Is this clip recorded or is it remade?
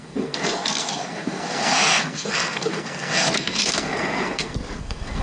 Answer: remade